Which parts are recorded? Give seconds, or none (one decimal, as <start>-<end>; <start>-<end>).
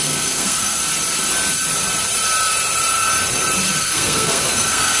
0.8-3.8